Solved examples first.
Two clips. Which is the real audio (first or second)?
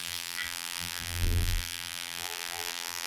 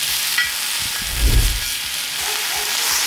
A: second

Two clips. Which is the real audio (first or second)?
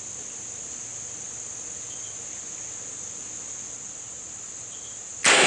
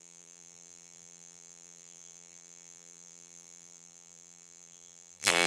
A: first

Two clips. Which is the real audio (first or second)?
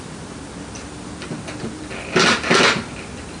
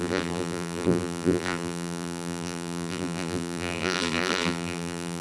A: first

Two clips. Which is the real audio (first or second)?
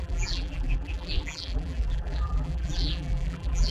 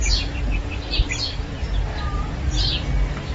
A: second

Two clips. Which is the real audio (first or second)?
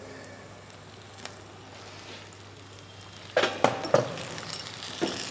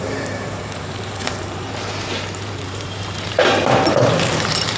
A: first